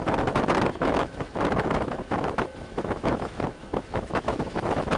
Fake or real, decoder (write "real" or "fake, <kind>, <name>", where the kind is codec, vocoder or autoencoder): fake, autoencoder, DAC-VAE